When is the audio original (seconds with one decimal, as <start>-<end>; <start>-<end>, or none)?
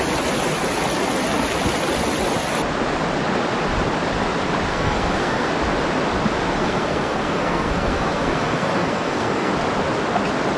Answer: 0.0-4.7; 5.5-6.6; 9.5-10.6